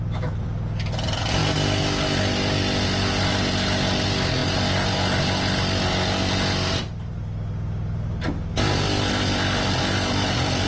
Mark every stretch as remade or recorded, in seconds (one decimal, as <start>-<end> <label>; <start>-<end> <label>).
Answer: 0.0-10.7 recorded